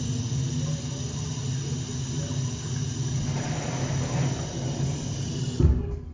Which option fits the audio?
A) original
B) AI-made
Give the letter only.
A